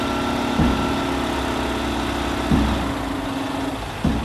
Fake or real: real